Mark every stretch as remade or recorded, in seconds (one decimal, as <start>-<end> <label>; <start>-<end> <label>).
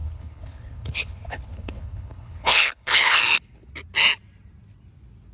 0.0-3.2 remade; 3.2-5.3 recorded